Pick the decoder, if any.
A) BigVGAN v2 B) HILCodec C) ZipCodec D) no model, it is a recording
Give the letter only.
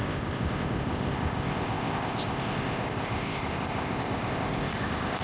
C